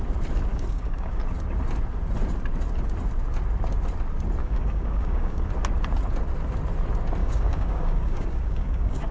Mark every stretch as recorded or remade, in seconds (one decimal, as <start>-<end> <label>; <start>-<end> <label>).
0.0-0.5 recorded; 0.5-1.2 remade; 1.2-4.4 recorded; 4.4-5.5 remade; 5.5-7.2 recorded; 7.2-9.1 remade